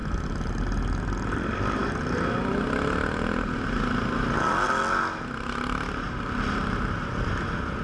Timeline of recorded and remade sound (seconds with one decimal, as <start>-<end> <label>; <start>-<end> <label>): 0.0-7.8 recorded